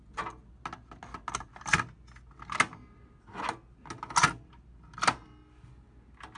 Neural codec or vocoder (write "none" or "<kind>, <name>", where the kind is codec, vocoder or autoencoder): none